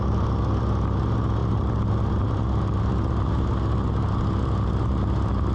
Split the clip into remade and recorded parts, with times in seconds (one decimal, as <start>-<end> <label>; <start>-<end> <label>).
0.0-5.5 recorded